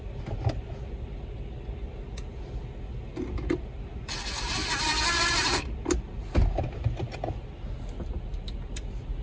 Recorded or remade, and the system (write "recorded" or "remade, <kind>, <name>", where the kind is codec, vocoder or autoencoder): recorded